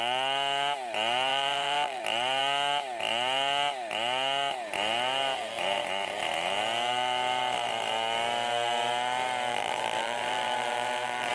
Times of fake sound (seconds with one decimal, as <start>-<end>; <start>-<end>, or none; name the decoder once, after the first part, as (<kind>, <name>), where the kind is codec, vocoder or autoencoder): 1.3-2.0 (vocoder, BigVGAN v2); 9.5-11.3